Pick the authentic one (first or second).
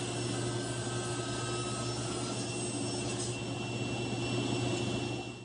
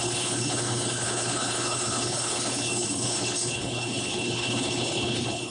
first